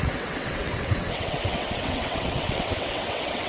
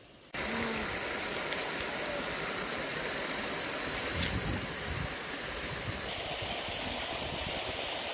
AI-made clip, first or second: first